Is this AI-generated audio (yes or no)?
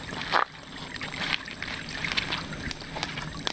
no